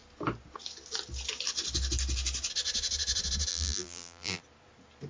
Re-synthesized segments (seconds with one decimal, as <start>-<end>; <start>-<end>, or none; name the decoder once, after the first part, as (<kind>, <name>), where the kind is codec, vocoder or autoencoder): 3.5-4.4 (vocoder, BigVGAN v2)